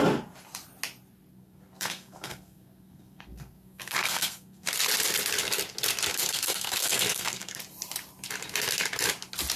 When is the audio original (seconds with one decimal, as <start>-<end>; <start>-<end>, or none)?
0.0-1.3; 4.7-6.1; 7.6-9.6